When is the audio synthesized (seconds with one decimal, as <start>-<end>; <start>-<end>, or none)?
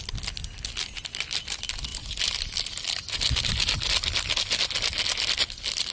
none